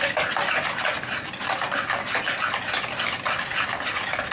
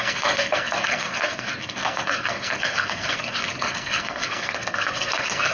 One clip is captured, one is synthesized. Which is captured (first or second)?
first